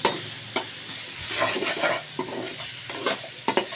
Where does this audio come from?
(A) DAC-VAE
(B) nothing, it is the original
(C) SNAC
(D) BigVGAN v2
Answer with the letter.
B